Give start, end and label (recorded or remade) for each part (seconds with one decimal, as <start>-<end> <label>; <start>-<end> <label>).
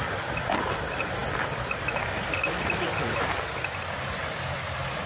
0.0-5.1 recorded